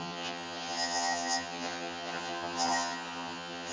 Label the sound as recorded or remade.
remade